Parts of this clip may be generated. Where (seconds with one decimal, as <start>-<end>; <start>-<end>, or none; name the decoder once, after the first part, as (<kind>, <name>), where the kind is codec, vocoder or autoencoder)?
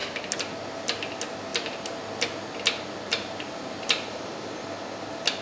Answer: 1.5-2.1 (vocoder, BigVGAN v2); 3.1-4.2